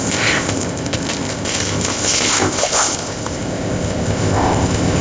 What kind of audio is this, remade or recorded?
remade